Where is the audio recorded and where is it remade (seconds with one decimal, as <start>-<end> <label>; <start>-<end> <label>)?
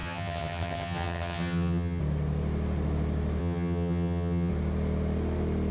0.0-2.0 remade; 2.0-3.4 recorded; 3.4-4.5 remade; 4.5-5.7 recorded